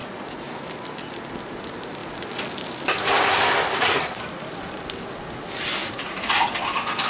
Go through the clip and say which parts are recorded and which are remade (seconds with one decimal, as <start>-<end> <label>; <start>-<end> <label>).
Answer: 0.0-0.5 remade; 0.5-5.8 recorded; 5.8-6.5 remade; 6.5-7.1 recorded